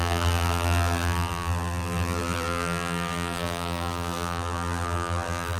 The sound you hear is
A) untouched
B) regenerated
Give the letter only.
B